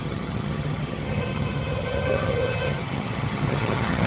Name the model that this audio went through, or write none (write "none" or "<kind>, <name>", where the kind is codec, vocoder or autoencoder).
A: vocoder, HiFi-GAN